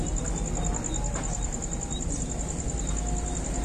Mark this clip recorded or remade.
recorded